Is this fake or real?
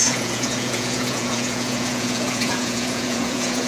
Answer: fake